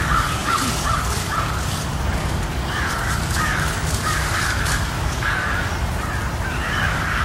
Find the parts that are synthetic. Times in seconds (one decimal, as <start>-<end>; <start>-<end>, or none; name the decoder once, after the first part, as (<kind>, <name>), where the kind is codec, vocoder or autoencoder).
0.0-5.7 (codec, DAC); 6.5-7.2